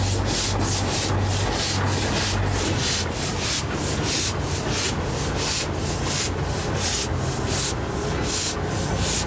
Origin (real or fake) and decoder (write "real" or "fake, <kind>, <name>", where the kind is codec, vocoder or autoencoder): real